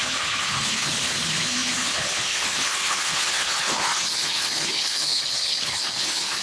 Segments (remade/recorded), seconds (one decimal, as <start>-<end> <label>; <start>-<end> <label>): 0.0-6.4 remade